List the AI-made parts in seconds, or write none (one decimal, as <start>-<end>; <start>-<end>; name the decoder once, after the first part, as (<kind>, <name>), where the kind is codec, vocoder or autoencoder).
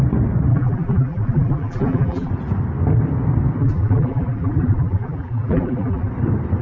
0.5-2.3 (vocoder, BigVGAN v2); 3.6-6.1